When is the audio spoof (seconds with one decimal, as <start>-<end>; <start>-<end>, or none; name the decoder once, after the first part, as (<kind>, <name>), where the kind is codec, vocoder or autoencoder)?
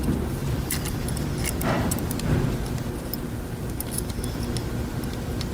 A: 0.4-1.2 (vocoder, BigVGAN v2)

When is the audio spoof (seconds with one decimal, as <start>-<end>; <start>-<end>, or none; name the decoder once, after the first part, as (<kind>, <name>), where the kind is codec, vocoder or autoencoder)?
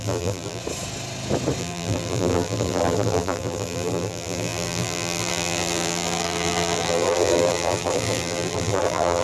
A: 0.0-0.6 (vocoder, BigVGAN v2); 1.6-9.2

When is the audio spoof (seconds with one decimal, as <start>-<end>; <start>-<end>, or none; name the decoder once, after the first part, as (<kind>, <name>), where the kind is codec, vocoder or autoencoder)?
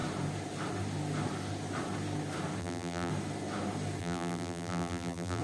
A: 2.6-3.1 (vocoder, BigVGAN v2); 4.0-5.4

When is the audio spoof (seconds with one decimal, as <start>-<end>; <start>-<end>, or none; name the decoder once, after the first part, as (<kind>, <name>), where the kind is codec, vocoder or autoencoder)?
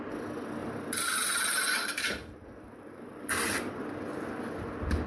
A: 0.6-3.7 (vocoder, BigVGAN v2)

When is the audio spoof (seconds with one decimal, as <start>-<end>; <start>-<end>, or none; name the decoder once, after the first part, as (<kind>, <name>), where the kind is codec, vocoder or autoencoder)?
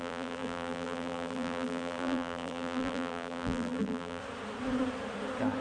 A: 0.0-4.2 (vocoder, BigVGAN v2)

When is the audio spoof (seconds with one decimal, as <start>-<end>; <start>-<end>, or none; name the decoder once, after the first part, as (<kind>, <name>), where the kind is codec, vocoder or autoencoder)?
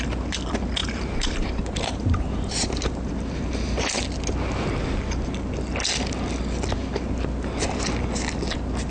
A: 0.8-3.1 (vocoder, BigVGAN v2)